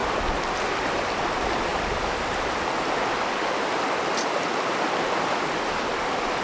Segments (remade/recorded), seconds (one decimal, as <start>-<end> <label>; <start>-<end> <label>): 0.0-1.7 recorded; 1.7-2.7 remade; 2.7-6.4 recorded